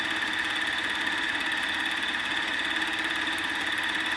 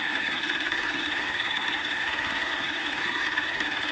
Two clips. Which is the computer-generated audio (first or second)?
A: second